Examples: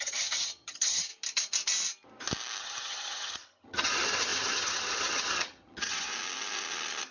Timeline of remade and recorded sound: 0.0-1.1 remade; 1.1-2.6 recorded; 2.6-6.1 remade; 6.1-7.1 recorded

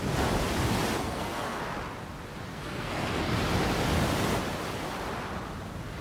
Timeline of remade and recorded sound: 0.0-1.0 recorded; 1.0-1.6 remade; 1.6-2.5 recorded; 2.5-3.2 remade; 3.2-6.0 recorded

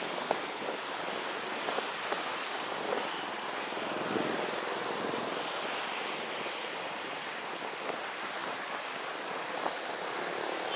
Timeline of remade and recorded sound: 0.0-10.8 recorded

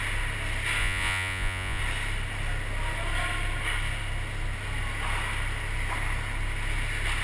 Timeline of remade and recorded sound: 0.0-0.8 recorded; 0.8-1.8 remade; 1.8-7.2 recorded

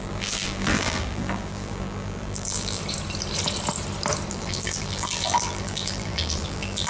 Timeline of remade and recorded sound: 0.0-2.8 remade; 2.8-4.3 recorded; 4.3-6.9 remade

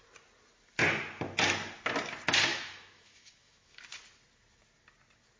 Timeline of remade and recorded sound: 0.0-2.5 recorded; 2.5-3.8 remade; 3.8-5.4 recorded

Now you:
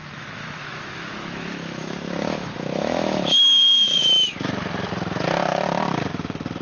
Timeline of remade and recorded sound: 0.0-4.0 remade; 4.0-6.6 recorded

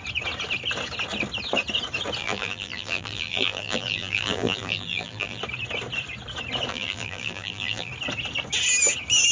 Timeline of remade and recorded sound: 0.0-2.2 recorded; 2.2-5.4 remade; 5.4-6.7 recorded; 6.7-7.9 remade; 7.9-9.3 recorded